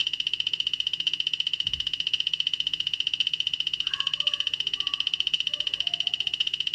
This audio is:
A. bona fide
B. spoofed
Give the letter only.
B